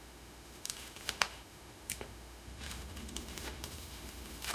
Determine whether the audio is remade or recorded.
remade